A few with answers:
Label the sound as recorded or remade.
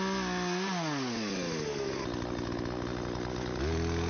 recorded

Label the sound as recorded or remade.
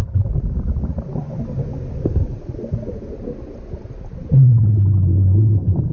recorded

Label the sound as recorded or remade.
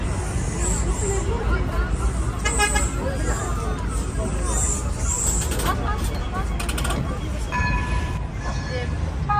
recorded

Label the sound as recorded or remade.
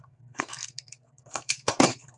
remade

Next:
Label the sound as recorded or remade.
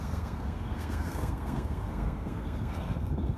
remade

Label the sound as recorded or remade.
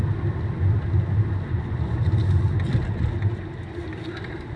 recorded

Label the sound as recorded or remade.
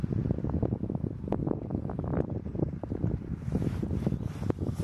recorded